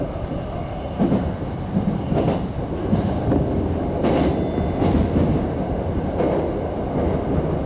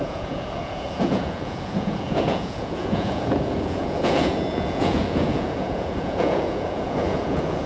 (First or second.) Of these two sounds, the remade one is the second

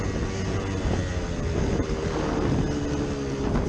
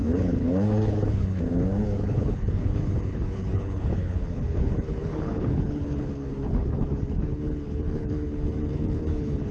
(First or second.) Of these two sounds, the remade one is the second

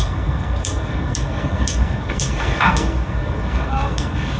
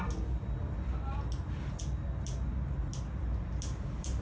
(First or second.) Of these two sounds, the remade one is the first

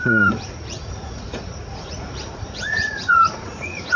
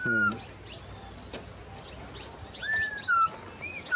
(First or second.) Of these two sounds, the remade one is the first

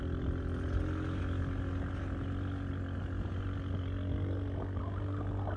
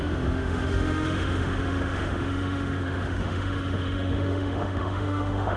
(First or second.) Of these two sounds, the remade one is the second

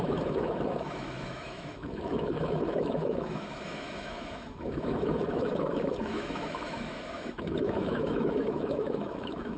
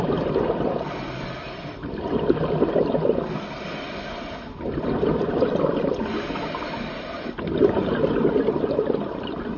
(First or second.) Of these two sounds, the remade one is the first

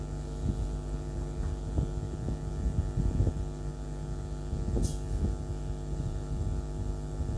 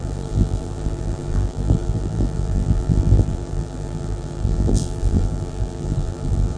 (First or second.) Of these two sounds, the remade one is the second